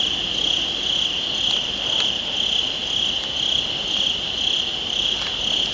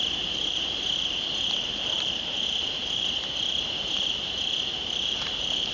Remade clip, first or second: second